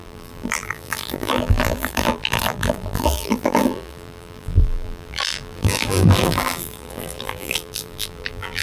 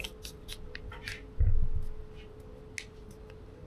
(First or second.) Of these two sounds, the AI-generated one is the first